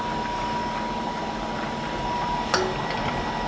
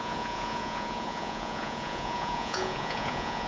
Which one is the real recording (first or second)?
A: first